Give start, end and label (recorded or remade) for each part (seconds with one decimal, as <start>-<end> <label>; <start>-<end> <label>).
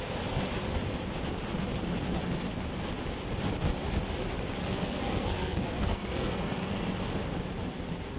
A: 0.0-4.6 recorded; 4.6-6.9 remade; 6.9-8.2 recorded